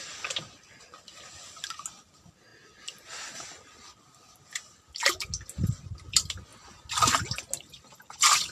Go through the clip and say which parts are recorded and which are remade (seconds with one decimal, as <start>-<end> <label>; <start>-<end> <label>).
0.0-8.5 recorded